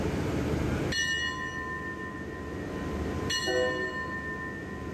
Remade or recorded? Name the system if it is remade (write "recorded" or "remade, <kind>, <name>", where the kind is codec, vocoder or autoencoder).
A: recorded